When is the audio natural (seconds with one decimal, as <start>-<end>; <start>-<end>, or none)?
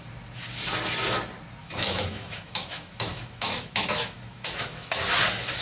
0.0-1.6; 5.0-5.6